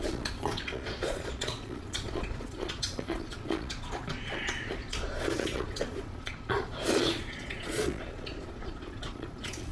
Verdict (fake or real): fake